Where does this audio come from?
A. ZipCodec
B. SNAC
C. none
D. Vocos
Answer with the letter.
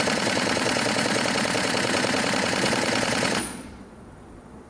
D